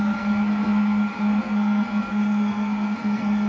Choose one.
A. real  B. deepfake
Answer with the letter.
B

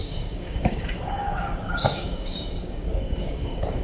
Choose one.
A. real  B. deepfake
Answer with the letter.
B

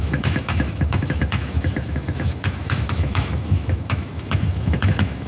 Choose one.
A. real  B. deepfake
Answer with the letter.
B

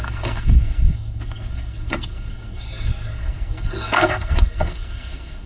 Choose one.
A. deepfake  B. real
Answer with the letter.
A